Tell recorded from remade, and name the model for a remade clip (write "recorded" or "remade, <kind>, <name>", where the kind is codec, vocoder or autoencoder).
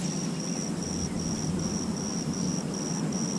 recorded